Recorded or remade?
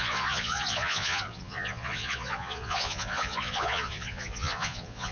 remade